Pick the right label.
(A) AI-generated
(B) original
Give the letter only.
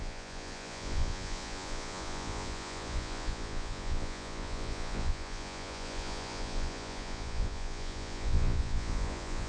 A